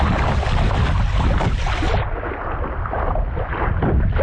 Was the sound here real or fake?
real